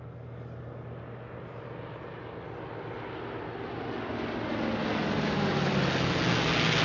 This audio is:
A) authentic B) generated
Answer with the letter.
A